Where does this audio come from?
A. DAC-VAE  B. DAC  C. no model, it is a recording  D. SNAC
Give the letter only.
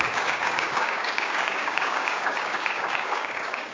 B